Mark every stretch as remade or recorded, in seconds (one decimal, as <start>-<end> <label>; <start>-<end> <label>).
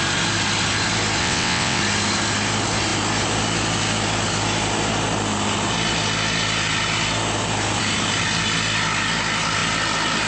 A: 0.0-1.2 recorded; 1.2-1.8 remade; 1.8-10.3 recorded